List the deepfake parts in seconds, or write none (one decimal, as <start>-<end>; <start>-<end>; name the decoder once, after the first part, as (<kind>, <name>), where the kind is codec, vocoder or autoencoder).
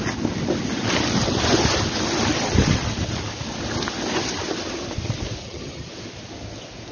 5.4-5.9 (vocoder, HiFi-GAN)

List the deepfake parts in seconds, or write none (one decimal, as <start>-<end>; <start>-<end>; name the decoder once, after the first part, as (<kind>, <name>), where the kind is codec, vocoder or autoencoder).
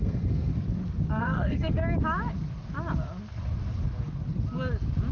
0.0-0.5 (codec, SNAC); 1.2-1.8